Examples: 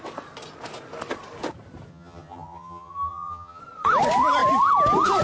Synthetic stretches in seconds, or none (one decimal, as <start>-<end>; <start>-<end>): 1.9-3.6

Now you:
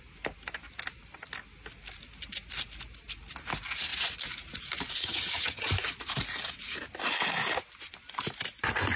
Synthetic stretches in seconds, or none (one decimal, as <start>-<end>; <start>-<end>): 5.0-5.7

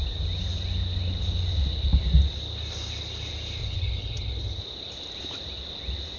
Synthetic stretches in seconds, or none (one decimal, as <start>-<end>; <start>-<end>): 3.6-4.6

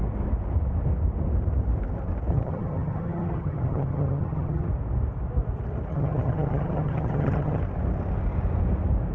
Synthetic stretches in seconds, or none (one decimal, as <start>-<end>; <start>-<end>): 2.3-4.7; 5.9-7.6

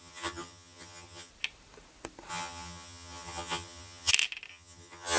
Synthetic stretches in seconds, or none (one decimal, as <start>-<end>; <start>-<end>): 0.0-1.3; 2.3-4.1; 4.5-5.2

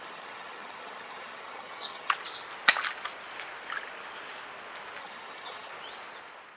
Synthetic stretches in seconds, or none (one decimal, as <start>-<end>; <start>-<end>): 0.0-2.1; 5.0-5.7

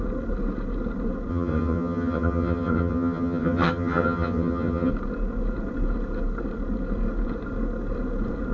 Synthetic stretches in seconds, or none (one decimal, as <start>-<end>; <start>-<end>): 1.3-4.9

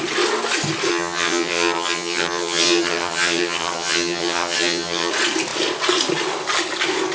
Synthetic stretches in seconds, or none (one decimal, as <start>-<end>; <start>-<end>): 0.9-5.1